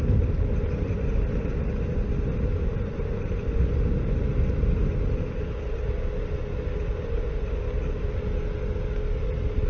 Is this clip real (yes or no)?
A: yes